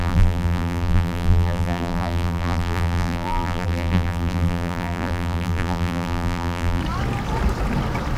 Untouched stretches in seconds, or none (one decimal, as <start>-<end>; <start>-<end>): 6.8-8.2